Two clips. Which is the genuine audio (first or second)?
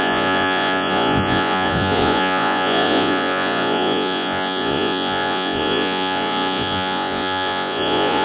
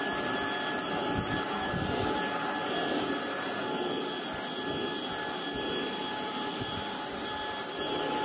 second